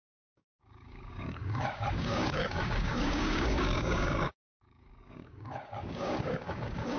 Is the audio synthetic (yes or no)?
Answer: yes